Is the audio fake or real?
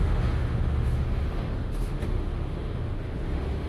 fake